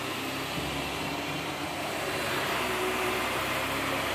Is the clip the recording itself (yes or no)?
no